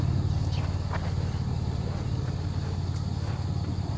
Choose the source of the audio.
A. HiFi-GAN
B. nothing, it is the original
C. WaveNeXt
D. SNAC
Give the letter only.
B